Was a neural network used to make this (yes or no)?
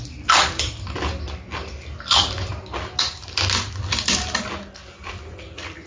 no